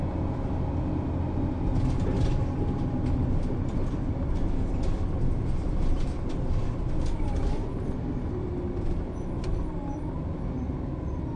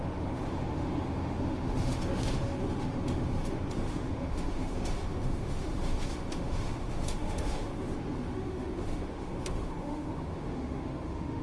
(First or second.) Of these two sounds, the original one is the first